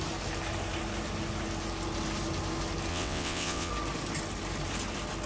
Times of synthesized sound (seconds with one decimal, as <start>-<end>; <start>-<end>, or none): 2.9-3.7